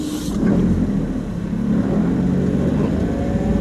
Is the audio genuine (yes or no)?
yes